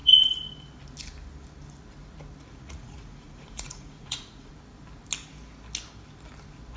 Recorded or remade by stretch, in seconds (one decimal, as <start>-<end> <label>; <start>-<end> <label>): 0.0-2.5 recorded; 2.5-4.5 remade; 4.5-6.8 recorded